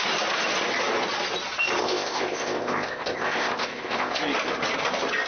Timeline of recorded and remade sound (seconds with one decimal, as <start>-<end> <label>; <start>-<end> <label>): 0.0-1.8 recorded; 1.8-4.2 remade; 4.2-5.3 recorded

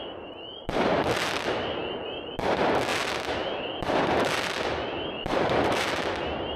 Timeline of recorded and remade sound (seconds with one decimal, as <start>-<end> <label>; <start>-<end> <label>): 0.0-0.5 recorded; 0.5-1.4 remade; 1.4-2.9 recorded; 2.9-5.9 remade; 5.9-6.6 recorded

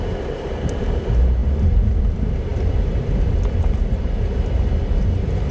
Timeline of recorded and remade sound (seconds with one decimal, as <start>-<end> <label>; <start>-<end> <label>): 0.0-5.5 recorded

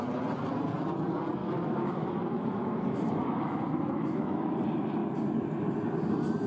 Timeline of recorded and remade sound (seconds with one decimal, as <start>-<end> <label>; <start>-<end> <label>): 0.0-1.4 recorded; 1.4-4.4 remade; 4.4-6.5 recorded

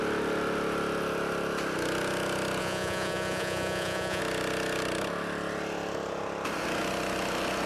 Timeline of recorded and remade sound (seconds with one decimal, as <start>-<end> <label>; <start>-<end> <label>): 0.0-2.6 recorded; 2.6-4.2 remade; 4.2-7.7 recorded

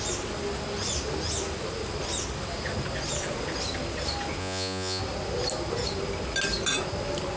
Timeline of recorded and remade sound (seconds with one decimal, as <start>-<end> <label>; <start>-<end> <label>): 0.0-4.4 recorded; 4.4-5.0 remade; 5.0-7.4 recorded

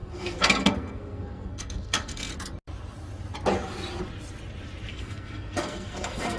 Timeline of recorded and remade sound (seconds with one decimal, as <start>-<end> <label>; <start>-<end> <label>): 0.0-2.3 remade; 2.3-4.9 recorded; 4.9-6.4 remade